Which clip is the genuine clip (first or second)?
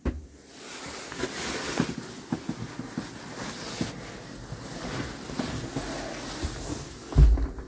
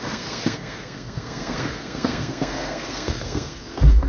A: first